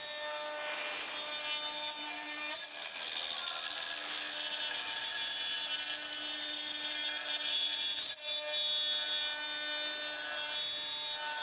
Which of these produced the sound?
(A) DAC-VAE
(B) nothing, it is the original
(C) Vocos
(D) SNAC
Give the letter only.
B